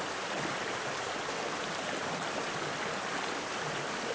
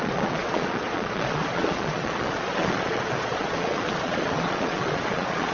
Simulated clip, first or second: second